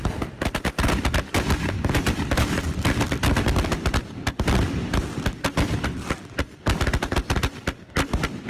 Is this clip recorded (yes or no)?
no